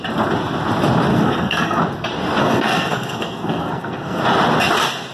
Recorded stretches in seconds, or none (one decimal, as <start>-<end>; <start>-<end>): 0.0-1.1; 1.8-2.4; 4.2-5.1

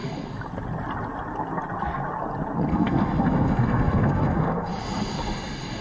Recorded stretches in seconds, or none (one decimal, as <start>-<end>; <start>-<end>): 0.0-2.7; 4.7-5.8

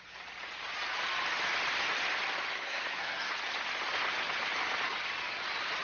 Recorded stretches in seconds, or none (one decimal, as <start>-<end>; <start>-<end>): 0.0-2.5; 3.3-5.8